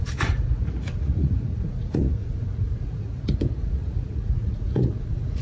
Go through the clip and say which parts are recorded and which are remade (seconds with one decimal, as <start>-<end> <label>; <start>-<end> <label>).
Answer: 0.0-3.2 remade; 3.2-3.6 recorded; 3.6-5.4 remade